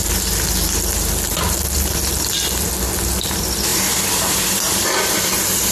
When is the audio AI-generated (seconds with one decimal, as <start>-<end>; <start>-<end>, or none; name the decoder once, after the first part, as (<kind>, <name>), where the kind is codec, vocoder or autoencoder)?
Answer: none